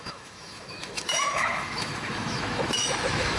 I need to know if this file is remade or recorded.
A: remade